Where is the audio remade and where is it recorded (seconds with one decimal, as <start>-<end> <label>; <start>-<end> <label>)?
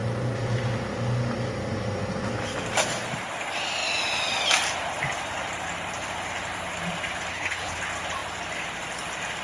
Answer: 0.0-7.3 recorded; 7.3-7.8 remade; 7.8-9.4 recorded